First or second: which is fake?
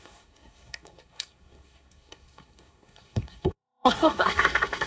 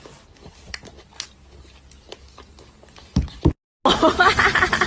first